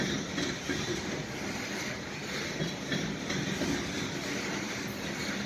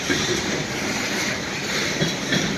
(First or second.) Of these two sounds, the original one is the first